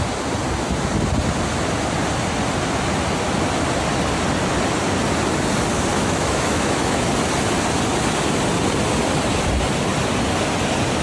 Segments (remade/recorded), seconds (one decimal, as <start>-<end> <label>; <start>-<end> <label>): 0.0-5.9 recorded; 5.9-7.1 remade; 7.1-11.0 recorded